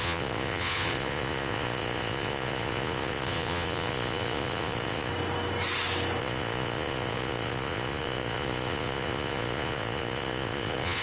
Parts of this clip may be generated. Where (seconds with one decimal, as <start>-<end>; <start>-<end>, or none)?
0.0-5.1; 6.2-11.0